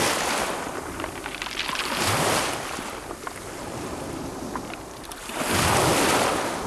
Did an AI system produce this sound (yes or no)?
no